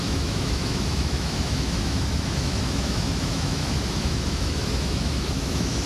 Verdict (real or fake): fake